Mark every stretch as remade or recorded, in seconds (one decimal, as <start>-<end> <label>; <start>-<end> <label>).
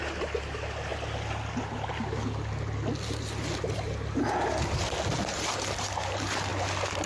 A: 0.0-0.9 remade; 0.9-5.2 recorded; 5.2-6.5 remade; 6.5-7.1 recorded